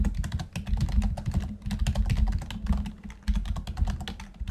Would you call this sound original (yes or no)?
yes